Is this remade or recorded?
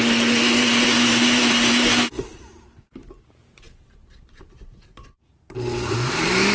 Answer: remade